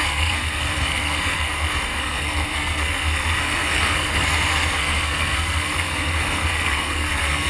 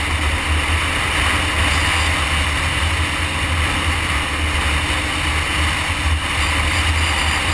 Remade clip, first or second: first